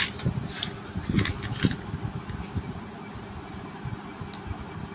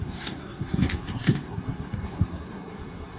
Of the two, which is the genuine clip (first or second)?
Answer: first